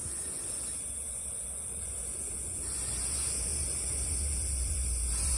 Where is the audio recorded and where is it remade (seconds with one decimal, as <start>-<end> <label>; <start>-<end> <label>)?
0.0-5.4 remade